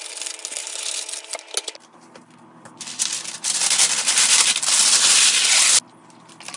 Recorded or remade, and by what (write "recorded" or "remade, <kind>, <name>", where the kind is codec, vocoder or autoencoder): recorded